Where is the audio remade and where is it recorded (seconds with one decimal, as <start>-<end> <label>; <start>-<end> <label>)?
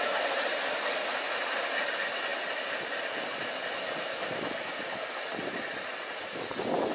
0.0-6.9 recorded